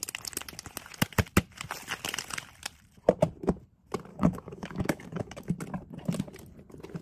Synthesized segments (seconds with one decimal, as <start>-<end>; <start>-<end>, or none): 4.1-5.5